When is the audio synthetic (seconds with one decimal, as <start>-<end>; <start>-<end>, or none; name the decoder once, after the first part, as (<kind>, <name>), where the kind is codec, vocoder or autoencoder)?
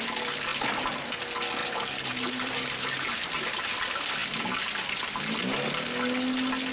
1.6-3.7 (vocoder, BigVGAN v2)